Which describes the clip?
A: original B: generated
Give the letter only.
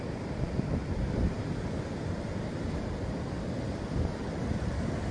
B